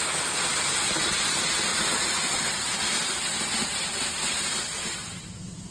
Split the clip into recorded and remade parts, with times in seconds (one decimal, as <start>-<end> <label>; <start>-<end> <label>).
0.0-5.7 recorded